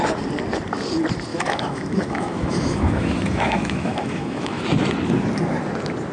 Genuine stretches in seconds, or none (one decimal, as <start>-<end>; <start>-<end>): 0.0-1.3; 4.6-6.1